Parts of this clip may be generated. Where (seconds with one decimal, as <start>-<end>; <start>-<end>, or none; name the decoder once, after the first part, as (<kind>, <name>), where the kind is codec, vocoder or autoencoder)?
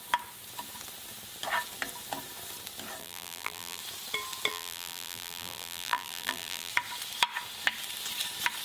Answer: 3.0-3.8 (vocoder, BigVGAN v2); 4.5-6.7